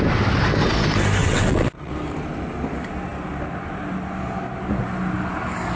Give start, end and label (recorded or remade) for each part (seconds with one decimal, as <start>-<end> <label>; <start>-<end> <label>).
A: 0.0-1.2 recorded; 1.2-1.9 remade; 1.9-5.8 recorded